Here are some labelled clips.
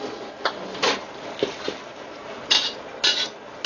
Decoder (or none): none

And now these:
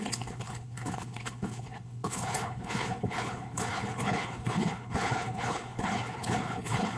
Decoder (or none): codec, HILCodec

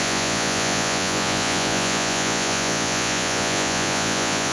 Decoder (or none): vocoder, Vocos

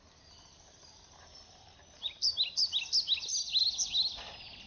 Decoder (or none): none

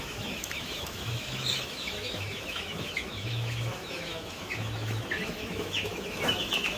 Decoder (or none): autoencoder, DAC-VAE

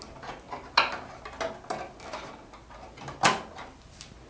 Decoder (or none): none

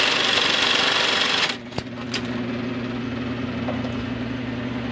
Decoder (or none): none